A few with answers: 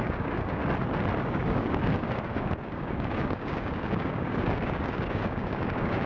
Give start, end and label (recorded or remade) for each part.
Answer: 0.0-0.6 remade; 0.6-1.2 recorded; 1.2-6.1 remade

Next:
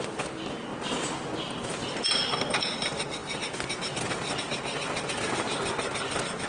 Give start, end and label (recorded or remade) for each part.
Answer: 0.0-6.5 recorded

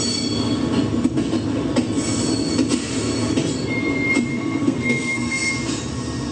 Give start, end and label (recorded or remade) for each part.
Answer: 0.0-4.3 recorded; 4.3-5.5 remade; 5.5-6.3 recorded